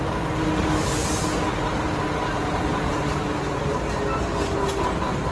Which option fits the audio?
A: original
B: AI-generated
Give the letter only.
A